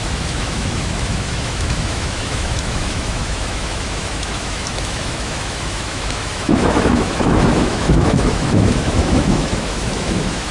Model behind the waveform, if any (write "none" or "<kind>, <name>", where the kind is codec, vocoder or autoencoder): autoencoder, DAC-VAE